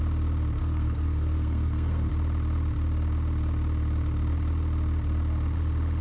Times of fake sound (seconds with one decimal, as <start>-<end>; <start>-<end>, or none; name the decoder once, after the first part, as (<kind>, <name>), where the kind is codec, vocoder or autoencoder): 0.6-2.1 (codec, SNAC)